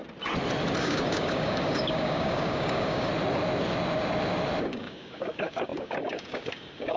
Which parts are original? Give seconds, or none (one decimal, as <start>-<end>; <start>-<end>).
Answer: 0.0-0.8; 3.1-4.6